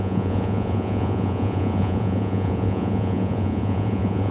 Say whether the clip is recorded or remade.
remade